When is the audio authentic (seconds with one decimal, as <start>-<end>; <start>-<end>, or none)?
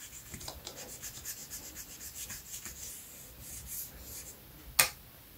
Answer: 0.0-5.4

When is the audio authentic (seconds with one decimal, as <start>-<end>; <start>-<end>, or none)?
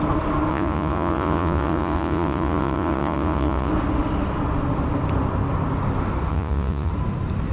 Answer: 0.0-0.5; 3.7-6.3; 6.9-7.5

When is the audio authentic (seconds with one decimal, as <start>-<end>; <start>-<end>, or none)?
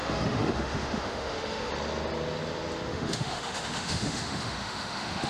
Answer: 1.7-2.9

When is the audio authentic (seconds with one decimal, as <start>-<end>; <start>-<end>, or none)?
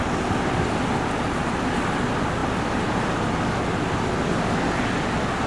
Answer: 0.0-5.5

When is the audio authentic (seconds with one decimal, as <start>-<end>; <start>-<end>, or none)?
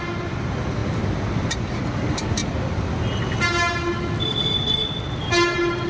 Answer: 0.0-5.9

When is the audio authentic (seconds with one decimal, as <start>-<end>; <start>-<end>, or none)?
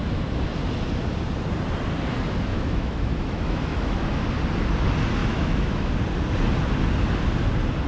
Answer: 0.0-2.5; 4.2-5.2; 5.9-7.9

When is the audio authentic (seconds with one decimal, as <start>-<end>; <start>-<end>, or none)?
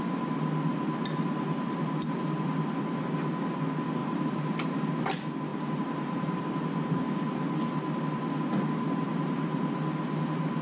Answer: 0.0-4.0; 4.9-5.5; 6.4-9.1; 9.6-10.6